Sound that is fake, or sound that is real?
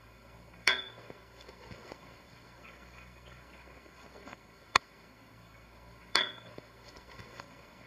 fake